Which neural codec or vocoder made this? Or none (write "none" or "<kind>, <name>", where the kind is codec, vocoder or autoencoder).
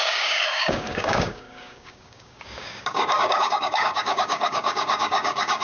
codec, DAC